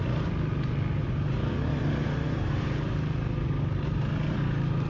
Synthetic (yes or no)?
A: no